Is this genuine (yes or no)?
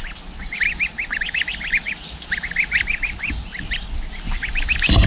yes